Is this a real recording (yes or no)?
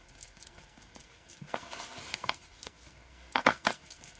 no